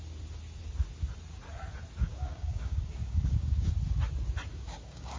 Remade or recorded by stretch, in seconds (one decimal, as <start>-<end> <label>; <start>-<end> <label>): 0.0-2.0 recorded; 2.0-3.7 remade; 3.7-4.5 recorded; 4.5-5.2 remade